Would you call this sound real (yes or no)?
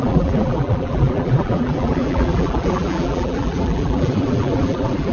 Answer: no